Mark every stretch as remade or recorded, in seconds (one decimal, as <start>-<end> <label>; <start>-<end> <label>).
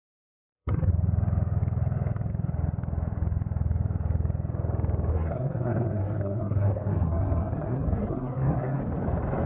0.0-0.9 remade; 0.9-5.1 recorded; 5.1-8.8 remade; 8.8-9.5 recorded